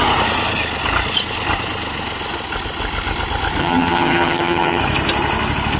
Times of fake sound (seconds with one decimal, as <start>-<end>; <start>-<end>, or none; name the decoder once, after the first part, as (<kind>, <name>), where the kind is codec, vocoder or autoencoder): 3.6-4.8 (vocoder, HiFi-GAN)